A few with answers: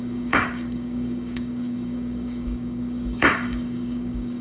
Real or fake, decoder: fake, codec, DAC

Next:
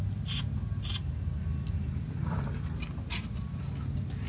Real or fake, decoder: real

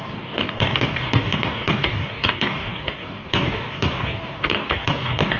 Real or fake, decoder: fake, codec, DAC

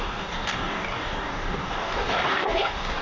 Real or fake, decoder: fake, codec, DAC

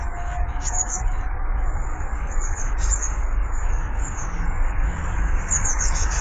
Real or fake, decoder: fake, codec, DAC